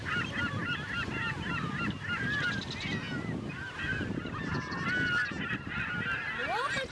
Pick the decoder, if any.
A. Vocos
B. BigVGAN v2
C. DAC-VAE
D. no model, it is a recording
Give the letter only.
D